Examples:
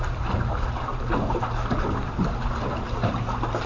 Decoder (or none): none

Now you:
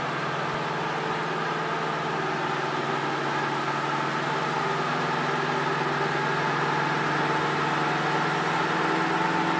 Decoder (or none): none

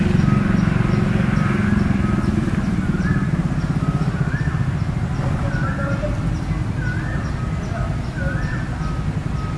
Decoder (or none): none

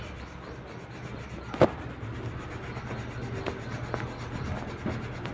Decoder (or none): none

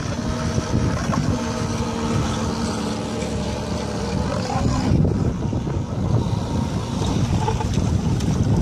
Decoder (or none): none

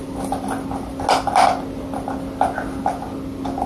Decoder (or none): none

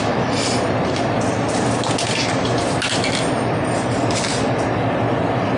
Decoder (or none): none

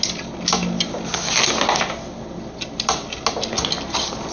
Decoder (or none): none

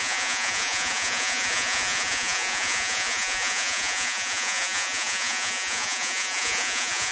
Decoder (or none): vocoder, Vocos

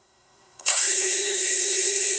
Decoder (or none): codec, SNAC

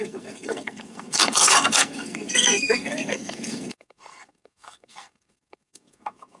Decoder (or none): codec, SNAC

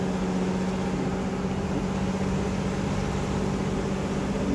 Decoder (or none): none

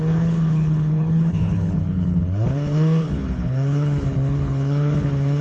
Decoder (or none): codec, HILCodec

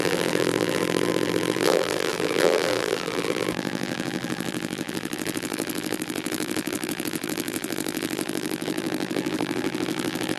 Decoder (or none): vocoder, BigVGAN v2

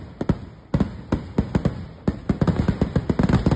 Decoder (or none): none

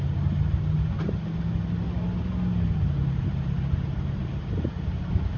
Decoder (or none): none